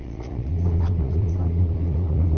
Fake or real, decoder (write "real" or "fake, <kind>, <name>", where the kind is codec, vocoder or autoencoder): fake, vocoder, Vocos